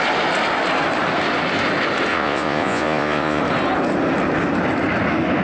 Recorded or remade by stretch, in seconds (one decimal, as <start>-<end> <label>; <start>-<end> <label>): 0.0-2.1 recorded; 2.1-3.4 remade; 3.4-5.4 recorded